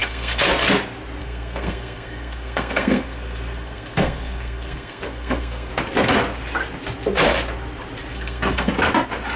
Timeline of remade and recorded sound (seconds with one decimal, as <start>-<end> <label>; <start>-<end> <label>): 0.0-0.5 remade; 0.5-1.2 recorded; 1.2-5.7 remade; 5.7-8.1 recorded; 8.1-8.7 remade; 8.7-9.4 recorded